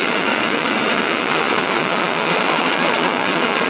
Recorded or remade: remade